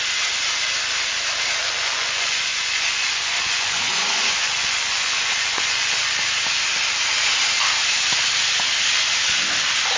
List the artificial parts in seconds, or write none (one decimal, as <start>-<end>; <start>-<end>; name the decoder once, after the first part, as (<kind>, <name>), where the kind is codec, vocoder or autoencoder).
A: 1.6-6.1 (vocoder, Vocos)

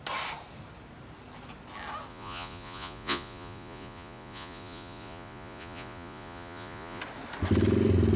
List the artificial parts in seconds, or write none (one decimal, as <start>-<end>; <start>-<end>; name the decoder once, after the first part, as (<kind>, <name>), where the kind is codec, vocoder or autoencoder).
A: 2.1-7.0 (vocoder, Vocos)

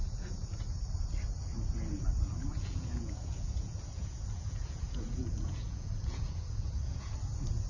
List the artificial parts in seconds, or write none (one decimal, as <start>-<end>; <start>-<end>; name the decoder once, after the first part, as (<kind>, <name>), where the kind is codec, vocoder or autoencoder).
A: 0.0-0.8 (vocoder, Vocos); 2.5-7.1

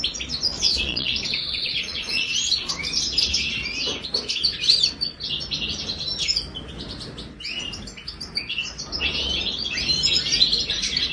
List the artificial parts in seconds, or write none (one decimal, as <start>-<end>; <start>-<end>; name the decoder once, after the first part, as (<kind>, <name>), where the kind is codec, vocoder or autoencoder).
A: 0.5-2.7 (vocoder, Vocos)